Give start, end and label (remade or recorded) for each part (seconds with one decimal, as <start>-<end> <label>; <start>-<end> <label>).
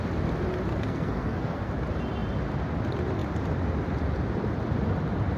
0.0-0.7 recorded; 0.7-1.7 remade; 1.7-5.4 recorded